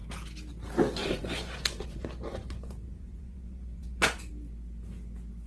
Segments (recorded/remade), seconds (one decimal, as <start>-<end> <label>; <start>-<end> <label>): 0.0-1.0 recorded; 1.0-4.3 remade; 4.3-5.5 recorded